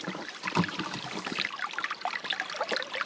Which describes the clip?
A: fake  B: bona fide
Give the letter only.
B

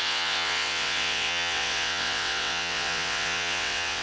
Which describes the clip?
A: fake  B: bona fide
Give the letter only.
A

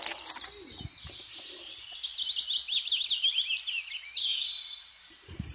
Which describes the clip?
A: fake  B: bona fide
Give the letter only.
B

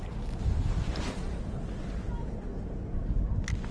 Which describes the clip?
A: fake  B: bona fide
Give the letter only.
B